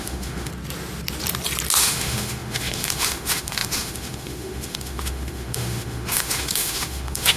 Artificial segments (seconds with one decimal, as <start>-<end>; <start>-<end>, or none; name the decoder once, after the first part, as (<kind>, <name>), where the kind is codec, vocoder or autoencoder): 0.0-0.5 (autoencoder, DAC-VAE); 1.8-7.4